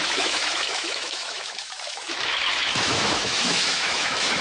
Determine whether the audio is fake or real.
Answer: fake